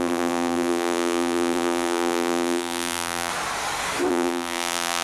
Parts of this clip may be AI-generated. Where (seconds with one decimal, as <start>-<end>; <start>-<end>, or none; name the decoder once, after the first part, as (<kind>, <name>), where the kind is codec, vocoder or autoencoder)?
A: 0.0-3.3 (vocoder, BigVGAN v2); 4.1-5.0